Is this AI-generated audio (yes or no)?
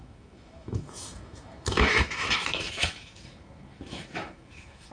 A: yes